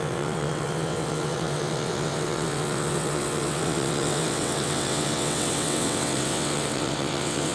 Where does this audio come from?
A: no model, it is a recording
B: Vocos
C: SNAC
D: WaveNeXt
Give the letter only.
D